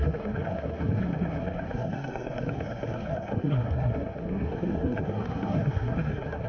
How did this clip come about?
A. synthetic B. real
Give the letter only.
A